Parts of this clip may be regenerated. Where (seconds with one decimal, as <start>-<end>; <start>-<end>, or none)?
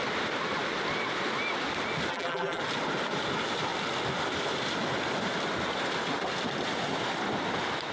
2.1-2.6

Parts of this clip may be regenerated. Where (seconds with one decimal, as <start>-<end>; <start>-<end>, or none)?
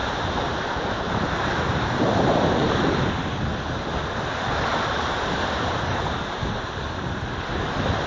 0.0-3.1; 4.5-6.4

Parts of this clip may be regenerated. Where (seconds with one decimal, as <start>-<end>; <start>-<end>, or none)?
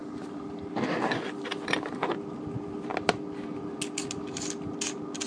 0.0-2.1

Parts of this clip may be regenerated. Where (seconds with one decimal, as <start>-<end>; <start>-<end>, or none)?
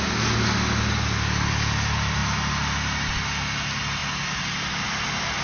2.2-3.2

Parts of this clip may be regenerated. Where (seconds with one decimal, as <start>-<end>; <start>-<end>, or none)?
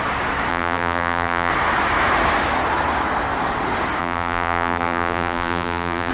0.5-1.5; 4.0-6.1